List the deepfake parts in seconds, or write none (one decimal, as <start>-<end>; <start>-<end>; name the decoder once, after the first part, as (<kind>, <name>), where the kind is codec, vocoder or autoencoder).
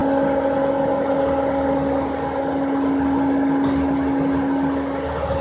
none